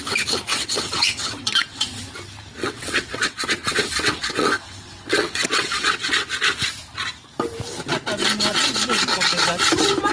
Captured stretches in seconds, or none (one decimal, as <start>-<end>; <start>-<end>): 0.0-0.5; 2.0-2.6; 6.1-10.1